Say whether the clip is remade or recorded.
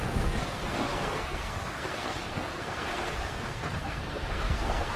remade